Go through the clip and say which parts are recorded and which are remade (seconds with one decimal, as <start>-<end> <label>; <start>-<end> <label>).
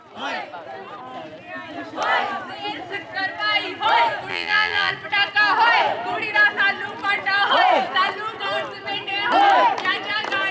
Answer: 0.0-4.3 recorded; 4.3-4.9 remade; 4.9-10.5 recorded